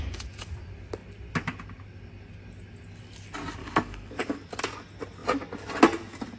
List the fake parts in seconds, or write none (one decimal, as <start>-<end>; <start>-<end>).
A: 3.6-4.6